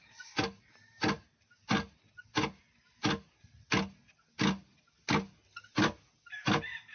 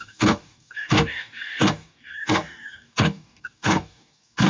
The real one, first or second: first